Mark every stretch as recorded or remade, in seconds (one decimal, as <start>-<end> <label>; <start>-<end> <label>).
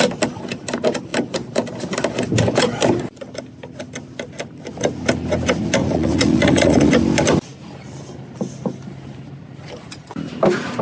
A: 0.0-5.8 recorded; 5.8-6.9 remade; 6.9-10.8 recorded